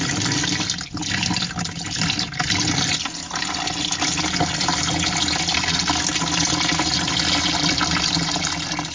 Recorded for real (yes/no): yes